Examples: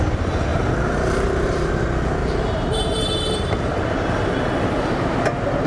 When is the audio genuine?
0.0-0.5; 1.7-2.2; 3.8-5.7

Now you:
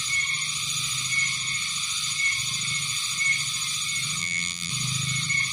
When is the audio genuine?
0.0-4.2; 4.7-5.5

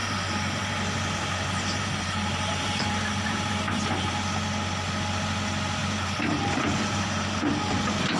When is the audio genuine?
3.5-5.8; 7.5-8.2

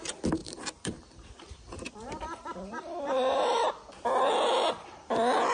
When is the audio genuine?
0.0-0.4; 3.7-5.5

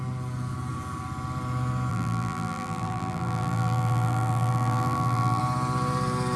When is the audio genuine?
0.0-1.9; 5.4-6.4

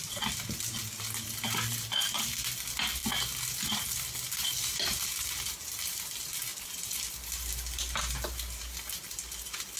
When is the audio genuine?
0.0-6.5; 7.5-9.8